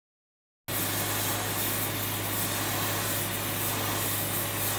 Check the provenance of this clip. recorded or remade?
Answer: recorded